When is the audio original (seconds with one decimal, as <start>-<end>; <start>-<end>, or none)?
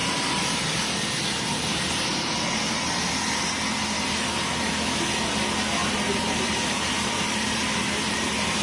0.0-5.8